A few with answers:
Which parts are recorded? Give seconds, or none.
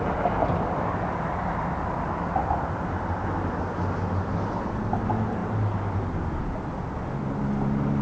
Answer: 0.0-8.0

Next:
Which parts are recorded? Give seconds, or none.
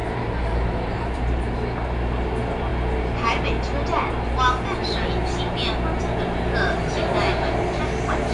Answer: 1.5-8.3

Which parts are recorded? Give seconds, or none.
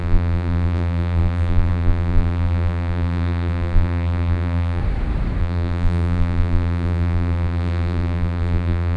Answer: 4.8-5.4